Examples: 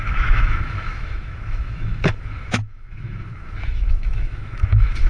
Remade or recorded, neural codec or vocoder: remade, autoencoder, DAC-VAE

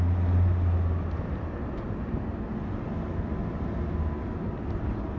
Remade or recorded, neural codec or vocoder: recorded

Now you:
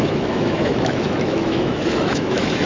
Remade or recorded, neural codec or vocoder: remade, autoencoder, DAC-VAE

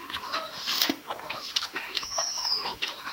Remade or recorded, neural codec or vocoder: remade, autoencoder, DAC-VAE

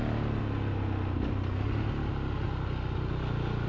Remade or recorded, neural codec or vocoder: recorded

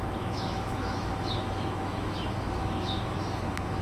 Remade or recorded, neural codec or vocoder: remade, autoencoder, DAC-VAE